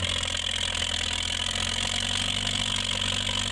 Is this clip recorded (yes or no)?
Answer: yes